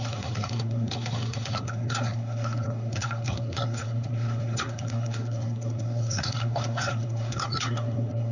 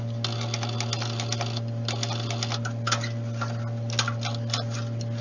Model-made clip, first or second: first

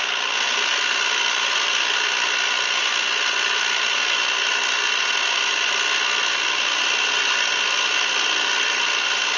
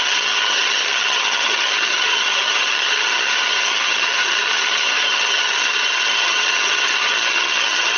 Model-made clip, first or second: second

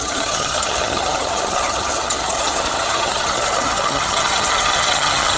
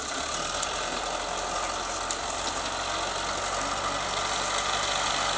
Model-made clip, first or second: first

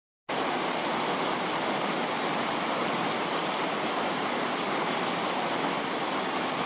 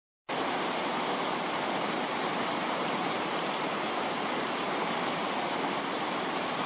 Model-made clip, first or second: second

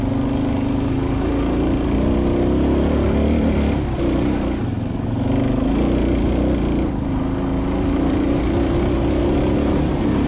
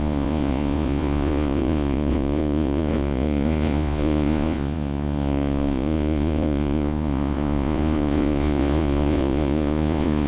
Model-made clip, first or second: second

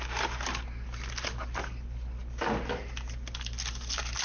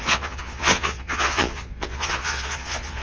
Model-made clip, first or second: second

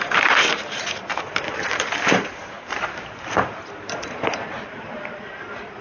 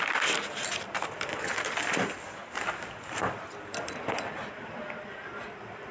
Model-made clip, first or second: first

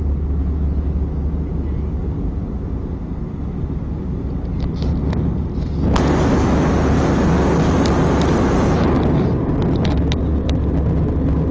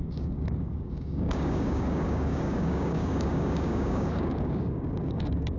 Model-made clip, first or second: second